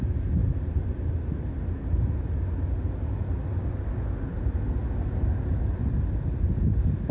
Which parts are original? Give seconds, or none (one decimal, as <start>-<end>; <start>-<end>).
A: 0.0-7.1